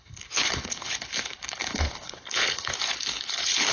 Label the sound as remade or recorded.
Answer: remade